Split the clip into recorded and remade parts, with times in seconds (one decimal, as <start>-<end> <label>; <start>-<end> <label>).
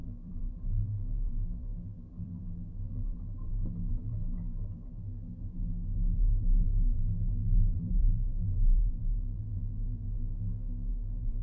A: 0.0-10.3 remade; 10.3-10.9 recorded; 10.9-11.4 remade